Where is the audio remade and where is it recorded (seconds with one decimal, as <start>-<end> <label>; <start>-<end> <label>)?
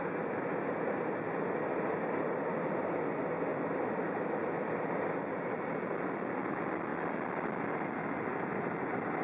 0.0-9.2 recorded